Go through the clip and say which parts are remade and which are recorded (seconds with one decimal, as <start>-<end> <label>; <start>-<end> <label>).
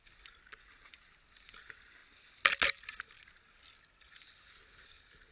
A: 0.0-5.3 recorded